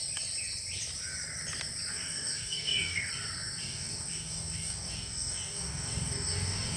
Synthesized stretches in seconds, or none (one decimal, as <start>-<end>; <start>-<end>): 1.9-3.1; 3.6-6.8